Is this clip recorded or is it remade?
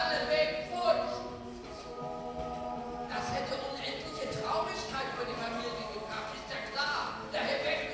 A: recorded